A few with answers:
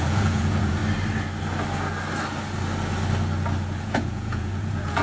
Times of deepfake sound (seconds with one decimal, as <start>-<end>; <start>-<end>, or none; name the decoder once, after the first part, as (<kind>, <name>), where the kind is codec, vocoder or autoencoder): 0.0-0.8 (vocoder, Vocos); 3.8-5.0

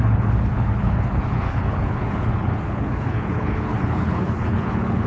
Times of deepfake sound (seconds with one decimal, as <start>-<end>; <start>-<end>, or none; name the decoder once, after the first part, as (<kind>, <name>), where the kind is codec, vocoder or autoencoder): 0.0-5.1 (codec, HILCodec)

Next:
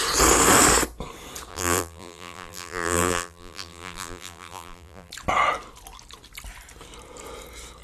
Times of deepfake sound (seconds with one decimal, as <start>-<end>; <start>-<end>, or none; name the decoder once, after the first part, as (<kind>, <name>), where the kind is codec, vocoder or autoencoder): 1.5-5.1 (vocoder, BigVGAN v2)